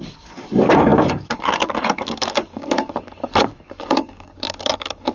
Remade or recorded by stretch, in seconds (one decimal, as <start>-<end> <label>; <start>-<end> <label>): 0.0-5.1 remade

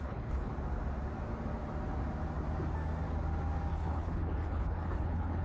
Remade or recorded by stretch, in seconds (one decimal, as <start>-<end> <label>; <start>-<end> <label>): 0.0-0.5 remade; 0.5-3.7 recorded; 3.7-5.4 remade